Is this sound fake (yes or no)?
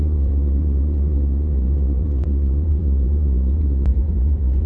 yes